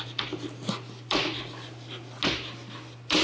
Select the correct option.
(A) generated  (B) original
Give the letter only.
B